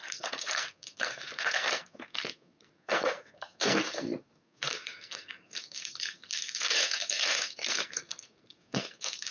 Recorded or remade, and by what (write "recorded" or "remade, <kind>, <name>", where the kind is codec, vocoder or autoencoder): remade, codec, SNAC